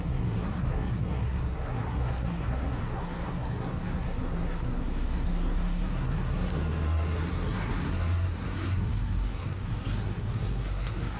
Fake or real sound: fake